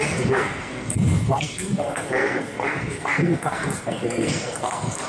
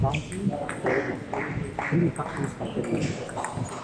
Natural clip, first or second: second